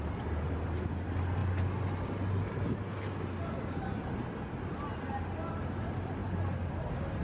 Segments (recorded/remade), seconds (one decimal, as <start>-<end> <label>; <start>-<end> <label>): 0.0-7.2 recorded